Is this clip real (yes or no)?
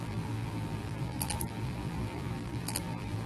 no